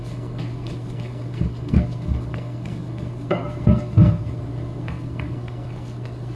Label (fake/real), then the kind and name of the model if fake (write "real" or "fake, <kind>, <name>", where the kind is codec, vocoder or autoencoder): fake, codec, SNAC